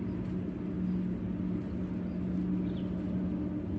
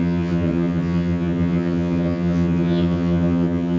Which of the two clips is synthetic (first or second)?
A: second